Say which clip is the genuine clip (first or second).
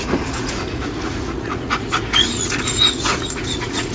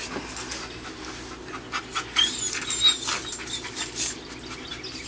second